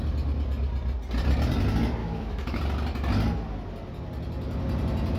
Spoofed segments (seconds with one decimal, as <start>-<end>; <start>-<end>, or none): 2.0-2.6